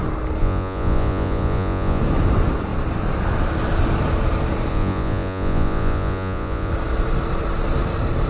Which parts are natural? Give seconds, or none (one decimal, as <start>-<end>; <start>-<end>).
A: 0.0-0.4; 2.0-4.7; 6.7-8.3